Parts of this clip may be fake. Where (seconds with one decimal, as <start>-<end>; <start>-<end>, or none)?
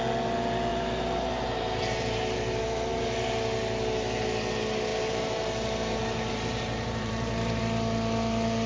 0.7-3.3; 4.9-7.6